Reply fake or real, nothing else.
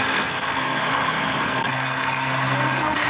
fake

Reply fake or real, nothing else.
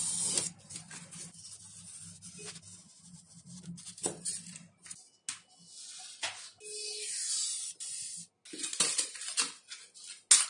real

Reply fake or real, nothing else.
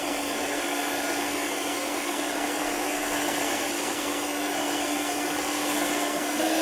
fake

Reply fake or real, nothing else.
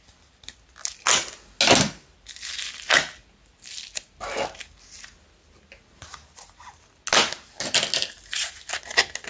real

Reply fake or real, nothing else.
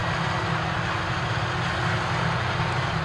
real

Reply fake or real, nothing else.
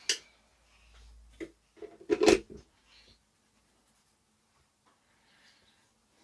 real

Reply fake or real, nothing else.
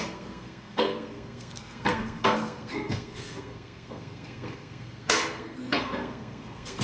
fake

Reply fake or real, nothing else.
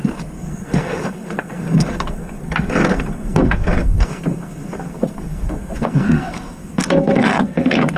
fake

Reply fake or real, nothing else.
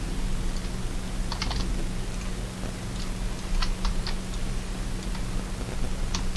real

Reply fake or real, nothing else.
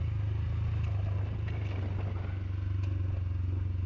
real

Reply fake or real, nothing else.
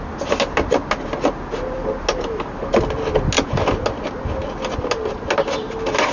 real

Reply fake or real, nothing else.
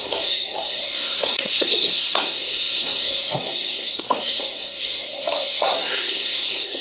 fake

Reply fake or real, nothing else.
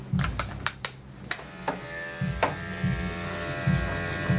real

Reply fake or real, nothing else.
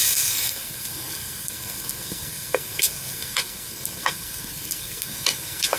fake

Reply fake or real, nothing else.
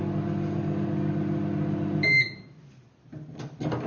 real